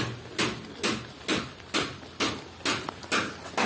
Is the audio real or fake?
real